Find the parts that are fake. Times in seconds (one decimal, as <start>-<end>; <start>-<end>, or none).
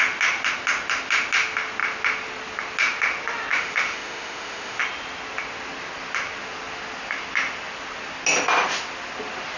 3.5-4.8